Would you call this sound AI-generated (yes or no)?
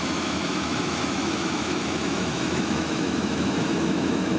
yes